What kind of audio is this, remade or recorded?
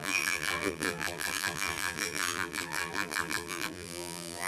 remade